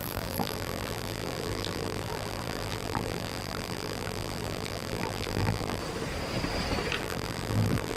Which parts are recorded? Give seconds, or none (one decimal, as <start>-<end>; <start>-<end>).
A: 5.8-7.0